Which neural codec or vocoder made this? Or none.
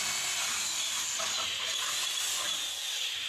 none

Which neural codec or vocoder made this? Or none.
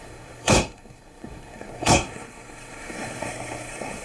codec, SNAC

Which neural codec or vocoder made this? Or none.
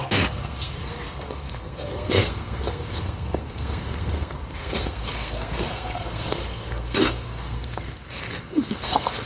codec, SNAC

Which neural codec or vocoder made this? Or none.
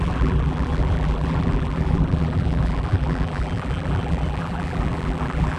vocoder, BigVGAN v2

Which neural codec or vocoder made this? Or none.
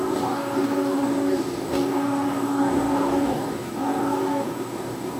codec, DAC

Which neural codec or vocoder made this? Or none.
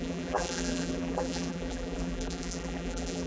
vocoder, BigVGAN v2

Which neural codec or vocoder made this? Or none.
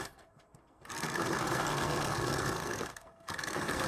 codec, SNAC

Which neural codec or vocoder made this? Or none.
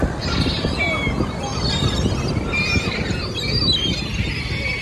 none